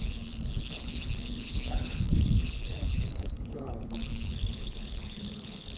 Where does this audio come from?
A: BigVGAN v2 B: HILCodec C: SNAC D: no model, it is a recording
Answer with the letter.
B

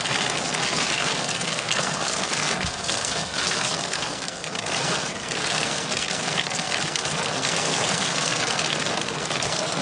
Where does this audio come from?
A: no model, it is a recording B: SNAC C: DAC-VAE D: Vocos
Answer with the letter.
B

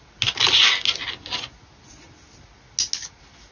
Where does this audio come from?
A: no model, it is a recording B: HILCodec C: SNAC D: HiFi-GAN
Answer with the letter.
A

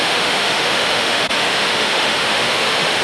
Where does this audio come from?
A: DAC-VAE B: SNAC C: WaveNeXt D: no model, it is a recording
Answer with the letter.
A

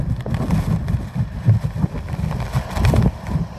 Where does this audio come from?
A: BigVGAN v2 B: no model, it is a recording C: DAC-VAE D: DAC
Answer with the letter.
B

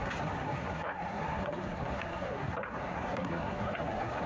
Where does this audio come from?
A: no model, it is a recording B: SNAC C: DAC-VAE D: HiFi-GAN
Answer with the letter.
B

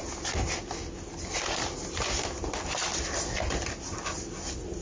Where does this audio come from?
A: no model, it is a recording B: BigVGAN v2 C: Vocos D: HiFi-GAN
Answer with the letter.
A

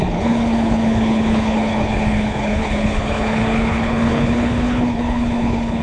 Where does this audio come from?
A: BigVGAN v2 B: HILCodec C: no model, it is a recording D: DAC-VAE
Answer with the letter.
B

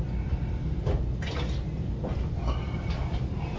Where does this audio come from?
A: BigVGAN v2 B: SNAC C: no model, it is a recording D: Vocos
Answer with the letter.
C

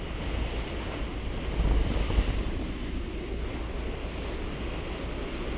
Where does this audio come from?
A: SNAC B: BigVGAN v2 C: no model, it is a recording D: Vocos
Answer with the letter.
C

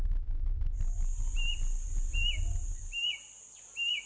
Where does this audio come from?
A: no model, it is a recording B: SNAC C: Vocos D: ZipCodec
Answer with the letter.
A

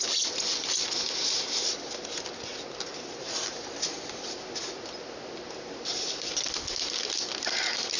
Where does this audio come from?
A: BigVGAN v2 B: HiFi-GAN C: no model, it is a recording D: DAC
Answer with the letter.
C